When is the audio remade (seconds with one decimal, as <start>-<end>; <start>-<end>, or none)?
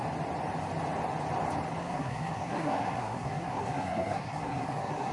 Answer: 1.8-5.1